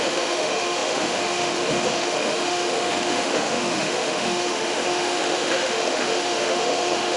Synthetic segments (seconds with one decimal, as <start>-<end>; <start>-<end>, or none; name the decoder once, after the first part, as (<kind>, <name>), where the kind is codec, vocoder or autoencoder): 0.0-7.2 (autoencoder, DAC-VAE)